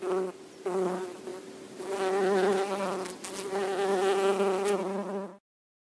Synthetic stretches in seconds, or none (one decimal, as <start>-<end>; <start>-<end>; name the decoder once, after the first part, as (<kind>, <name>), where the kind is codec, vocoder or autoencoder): none

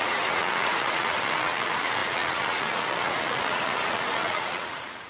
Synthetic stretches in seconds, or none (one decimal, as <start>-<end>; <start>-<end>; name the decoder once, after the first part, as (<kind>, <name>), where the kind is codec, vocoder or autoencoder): 0.0-5.1 (vocoder, Vocos)

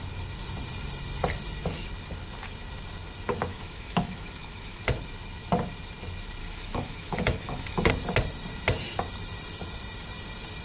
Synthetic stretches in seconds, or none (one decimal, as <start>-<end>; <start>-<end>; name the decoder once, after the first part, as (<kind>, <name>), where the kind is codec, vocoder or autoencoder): 3.5-4.8 (autoencoder, DAC-VAE); 6.4-7.9

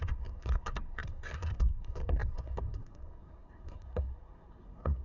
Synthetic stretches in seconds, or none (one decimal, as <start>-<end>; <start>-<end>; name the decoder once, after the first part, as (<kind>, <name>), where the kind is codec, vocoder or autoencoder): 0.0-5.0 (codec, SNAC)

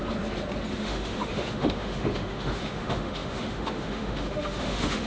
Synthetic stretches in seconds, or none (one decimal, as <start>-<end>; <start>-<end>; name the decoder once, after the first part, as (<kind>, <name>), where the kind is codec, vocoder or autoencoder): 0.8-5.1 (autoencoder, DAC-VAE)

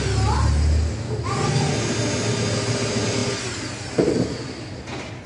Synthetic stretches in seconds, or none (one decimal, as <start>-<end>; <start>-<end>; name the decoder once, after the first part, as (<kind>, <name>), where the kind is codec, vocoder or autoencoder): none

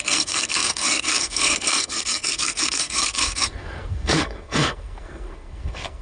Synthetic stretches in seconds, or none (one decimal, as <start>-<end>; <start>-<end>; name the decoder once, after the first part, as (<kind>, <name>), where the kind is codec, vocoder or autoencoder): 0.0-6.0 (codec, SNAC)